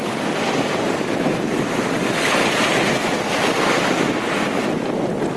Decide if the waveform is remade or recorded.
recorded